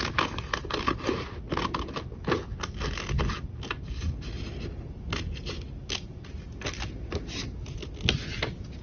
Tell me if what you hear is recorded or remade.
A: recorded